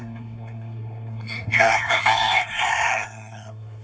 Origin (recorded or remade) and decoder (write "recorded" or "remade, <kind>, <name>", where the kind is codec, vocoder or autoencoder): remade, codec, SNAC